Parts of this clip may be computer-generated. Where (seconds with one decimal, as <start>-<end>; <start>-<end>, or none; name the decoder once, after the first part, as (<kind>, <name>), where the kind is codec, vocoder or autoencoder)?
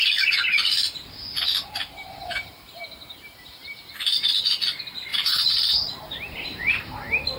2.2-4.3 (vocoder, BigVGAN v2); 5.1-6.8